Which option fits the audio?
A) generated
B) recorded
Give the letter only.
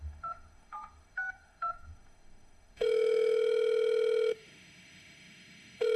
A